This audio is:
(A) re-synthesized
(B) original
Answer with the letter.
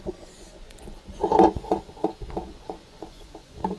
A